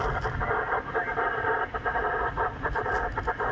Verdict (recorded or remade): recorded